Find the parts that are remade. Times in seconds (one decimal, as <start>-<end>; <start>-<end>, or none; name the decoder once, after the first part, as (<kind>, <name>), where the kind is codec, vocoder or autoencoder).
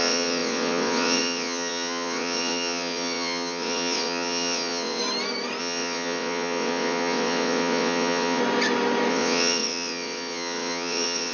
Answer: 0.0-5.0 (vocoder, WaveNeXt); 5.6-8.4; 9.1-11.3